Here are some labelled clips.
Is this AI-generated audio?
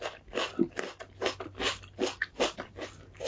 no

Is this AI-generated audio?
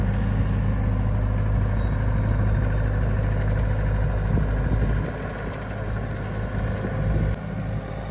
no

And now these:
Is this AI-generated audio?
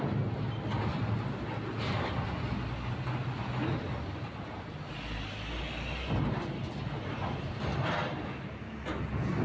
no